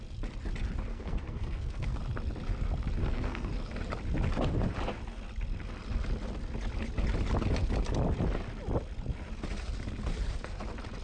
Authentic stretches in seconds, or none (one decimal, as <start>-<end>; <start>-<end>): 0.0-0.9; 2.0-3.0; 3.5-11.0